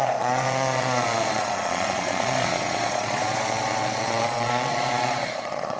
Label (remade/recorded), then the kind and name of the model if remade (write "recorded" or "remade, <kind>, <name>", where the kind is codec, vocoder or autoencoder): remade, vocoder, Vocos